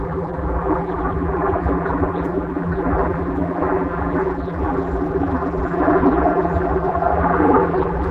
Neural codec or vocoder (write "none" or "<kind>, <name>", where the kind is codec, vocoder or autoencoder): vocoder, BigVGAN v2